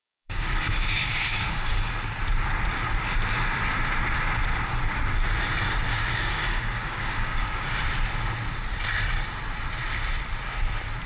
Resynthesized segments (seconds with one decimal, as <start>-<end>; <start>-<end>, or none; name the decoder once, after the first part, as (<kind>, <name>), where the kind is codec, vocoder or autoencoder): 0.0-1.9 (codec, DAC); 5.9-7.8